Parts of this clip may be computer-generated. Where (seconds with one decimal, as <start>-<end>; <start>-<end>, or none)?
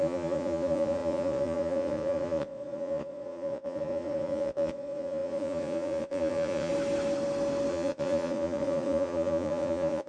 0.0-6.7; 7.7-10.1